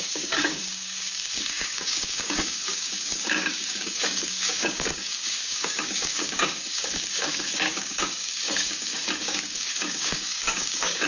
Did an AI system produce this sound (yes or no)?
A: yes